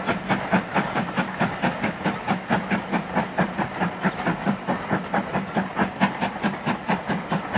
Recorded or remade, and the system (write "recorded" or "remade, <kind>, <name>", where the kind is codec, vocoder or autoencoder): recorded